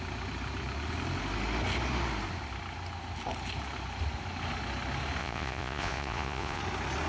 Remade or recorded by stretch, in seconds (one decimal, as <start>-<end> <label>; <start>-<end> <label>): 0.0-5.2 recorded; 5.2-6.6 remade; 6.6-7.1 recorded

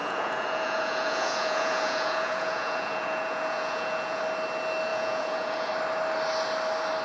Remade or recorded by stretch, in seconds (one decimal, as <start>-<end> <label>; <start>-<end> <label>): 0.0-4.2 remade; 4.2-4.9 recorded; 4.9-5.7 remade; 5.7-7.0 recorded

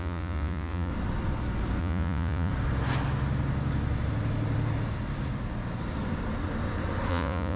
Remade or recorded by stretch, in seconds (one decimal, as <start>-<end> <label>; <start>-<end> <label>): 0.0-0.9 remade; 0.9-1.8 recorded; 1.8-2.5 remade; 2.5-7.1 recorded; 7.1-7.6 remade

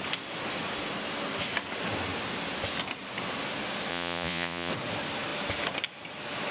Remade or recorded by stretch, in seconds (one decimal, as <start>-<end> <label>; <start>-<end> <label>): 0.0-3.9 recorded; 3.9-4.7 remade; 4.7-6.5 recorded

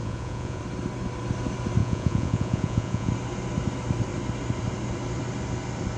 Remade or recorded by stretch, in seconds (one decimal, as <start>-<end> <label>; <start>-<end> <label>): 0.0-0.6 remade; 0.6-1.8 recorded; 1.8-3.1 remade; 3.1-6.0 recorded

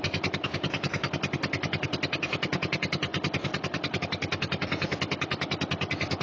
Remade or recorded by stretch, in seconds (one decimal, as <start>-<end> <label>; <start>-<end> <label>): 0.0-6.2 recorded

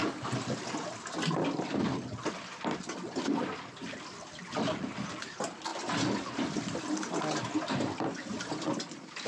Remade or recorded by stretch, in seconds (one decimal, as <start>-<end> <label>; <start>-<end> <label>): 0.0-9.3 recorded

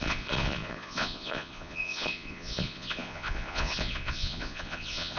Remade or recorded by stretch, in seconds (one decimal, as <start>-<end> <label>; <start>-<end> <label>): 0.0-5.2 remade